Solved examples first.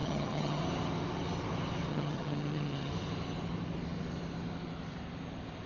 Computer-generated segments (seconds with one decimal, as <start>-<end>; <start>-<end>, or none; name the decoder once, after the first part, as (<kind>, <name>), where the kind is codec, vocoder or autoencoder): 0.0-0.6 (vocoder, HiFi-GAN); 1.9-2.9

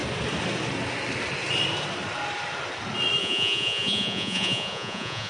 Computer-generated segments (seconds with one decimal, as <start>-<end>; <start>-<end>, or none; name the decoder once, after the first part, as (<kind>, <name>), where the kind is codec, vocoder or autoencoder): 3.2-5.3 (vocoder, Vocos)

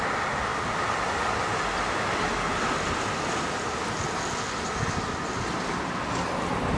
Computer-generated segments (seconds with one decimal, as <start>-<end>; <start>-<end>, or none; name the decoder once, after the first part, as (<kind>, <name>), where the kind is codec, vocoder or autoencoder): none

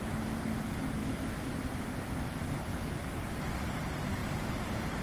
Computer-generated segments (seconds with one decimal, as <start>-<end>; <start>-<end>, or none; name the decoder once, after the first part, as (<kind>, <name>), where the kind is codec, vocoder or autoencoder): 1.0-1.5 (vocoder, BigVGAN v2); 4.2-5.0

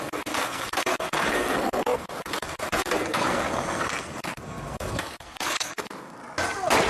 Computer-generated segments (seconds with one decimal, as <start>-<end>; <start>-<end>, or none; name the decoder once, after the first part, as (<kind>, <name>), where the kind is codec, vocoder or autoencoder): 0.0-6.2 (codec, SNAC)